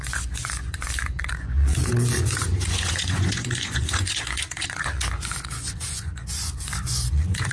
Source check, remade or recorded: remade